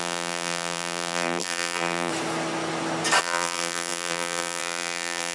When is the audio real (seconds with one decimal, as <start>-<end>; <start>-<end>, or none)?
2.1-3.2